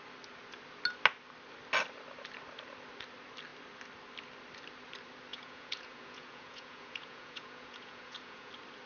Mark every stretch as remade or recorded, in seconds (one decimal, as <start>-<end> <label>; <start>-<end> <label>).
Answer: 0.0-5.3 recorded; 5.3-8.5 remade; 8.5-8.9 recorded